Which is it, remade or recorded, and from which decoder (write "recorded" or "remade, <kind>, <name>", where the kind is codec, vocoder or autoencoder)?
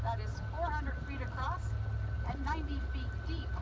recorded